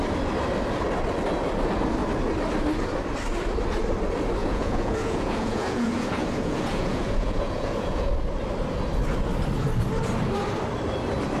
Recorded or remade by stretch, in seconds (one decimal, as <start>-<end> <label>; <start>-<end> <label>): 0.0-4.4 recorded; 4.4-8.1 remade; 8.1-11.4 recorded